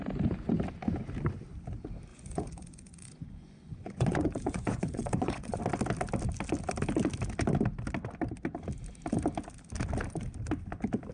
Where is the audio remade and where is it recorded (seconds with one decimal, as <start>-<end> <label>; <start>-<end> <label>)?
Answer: 0.0-2.1 recorded; 2.1-5.6 remade; 5.6-11.1 recorded